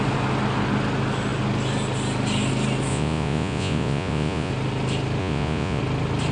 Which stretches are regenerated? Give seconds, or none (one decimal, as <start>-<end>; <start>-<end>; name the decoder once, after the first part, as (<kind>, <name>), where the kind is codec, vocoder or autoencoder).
2.9-4.5 (vocoder, Vocos); 5.2-5.8